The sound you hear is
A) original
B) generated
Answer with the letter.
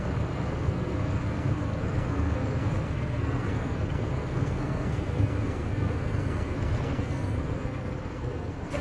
B